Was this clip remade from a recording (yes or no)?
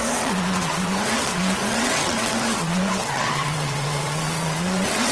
yes